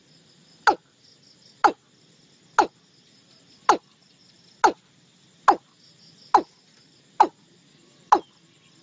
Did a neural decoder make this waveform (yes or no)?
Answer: no